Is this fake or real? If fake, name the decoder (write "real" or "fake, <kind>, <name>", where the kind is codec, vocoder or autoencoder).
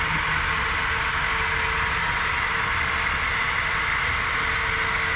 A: real